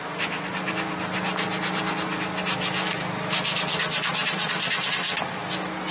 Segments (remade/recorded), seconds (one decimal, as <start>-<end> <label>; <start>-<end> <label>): 0.0-4.2 recorded; 4.2-5.5 remade; 5.5-5.9 recorded